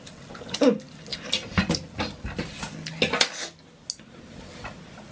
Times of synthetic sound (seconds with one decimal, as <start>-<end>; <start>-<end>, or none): none